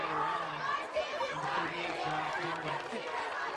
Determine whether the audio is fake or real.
real